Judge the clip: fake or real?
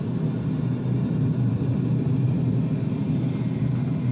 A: real